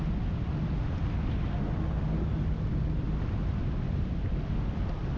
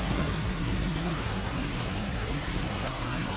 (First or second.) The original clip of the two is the first